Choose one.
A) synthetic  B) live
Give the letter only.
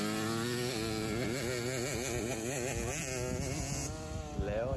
B